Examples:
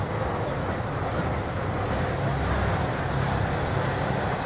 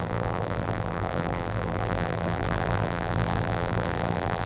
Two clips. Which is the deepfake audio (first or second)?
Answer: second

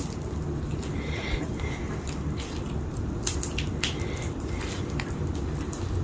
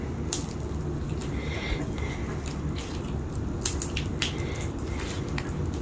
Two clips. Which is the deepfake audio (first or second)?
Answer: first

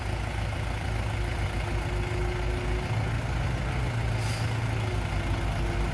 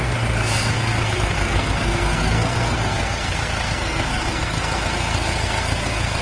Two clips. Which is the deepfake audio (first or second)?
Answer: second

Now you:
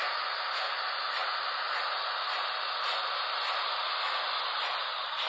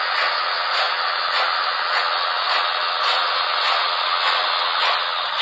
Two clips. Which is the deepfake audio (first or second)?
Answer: second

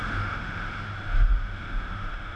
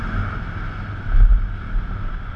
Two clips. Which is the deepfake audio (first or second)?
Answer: first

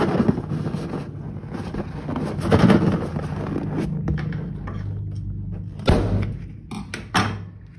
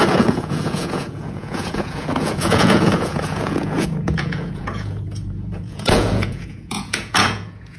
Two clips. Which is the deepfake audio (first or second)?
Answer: second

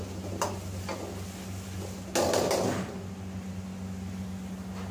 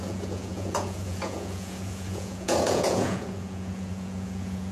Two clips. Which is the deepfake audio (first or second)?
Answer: second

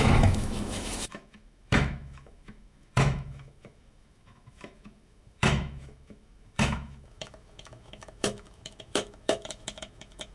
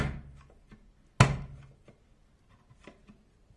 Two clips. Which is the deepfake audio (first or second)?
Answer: first